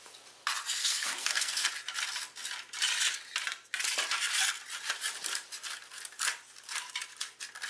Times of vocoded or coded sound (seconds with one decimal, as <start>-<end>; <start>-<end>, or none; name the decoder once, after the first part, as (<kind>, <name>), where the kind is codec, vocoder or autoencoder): 0.8-1.7 (codec, SNAC)